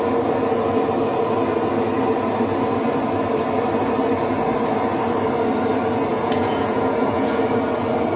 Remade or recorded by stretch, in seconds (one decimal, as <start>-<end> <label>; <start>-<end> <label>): 0.0-6.1 recorded; 6.1-7.4 remade; 7.4-8.2 recorded